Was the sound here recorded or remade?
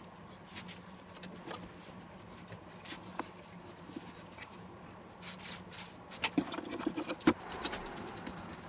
recorded